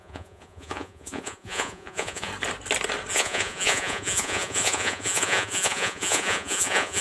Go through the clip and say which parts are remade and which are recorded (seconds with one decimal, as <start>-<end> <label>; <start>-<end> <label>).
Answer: 0.0-2.3 remade; 2.3-3.1 recorded; 3.1-7.0 remade